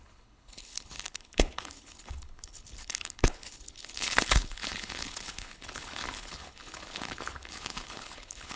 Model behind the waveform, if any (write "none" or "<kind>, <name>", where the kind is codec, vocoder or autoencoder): codec, HILCodec